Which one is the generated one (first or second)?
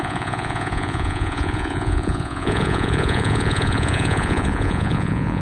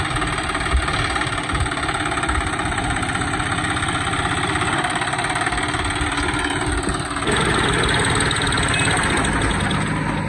first